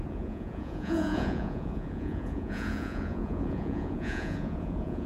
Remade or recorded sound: remade